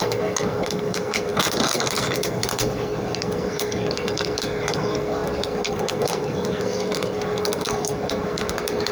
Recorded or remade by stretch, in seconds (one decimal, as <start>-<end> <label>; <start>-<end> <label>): 0.0-8.9 remade